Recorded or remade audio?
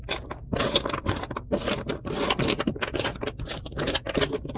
remade